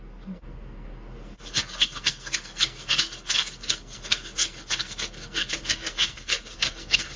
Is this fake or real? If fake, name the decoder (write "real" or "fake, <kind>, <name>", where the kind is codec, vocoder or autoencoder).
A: fake, codec, SNAC